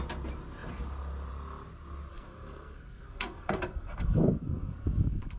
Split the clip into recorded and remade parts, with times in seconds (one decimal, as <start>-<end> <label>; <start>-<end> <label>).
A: 0.0-2.1 recorded; 2.1-5.4 remade